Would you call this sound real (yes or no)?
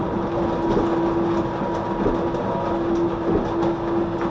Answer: yes